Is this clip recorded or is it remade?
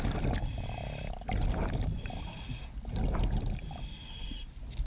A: recorded